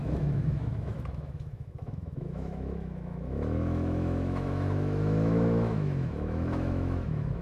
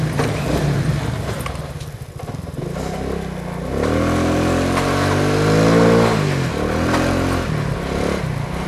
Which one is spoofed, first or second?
first